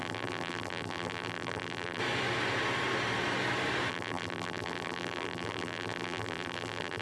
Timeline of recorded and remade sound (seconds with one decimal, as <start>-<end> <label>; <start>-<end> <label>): 0.0-2.0 remade; 2.0-3.9 recorded; 3.9-7.0 remade